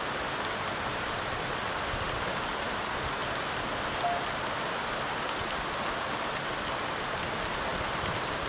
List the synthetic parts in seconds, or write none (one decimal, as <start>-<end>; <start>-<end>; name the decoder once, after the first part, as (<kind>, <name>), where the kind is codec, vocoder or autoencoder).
none

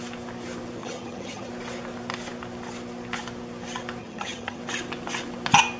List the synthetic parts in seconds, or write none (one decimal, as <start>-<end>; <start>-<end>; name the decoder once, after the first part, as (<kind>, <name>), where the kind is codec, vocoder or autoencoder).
0.8-1.5 (vocoder, HiFi-GAN); 4.0-4.6